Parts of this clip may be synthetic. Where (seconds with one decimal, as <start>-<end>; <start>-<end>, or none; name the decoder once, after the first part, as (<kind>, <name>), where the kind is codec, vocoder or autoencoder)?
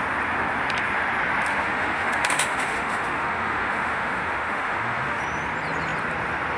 1.5-5.2 (autoencoder, DAC-VAE)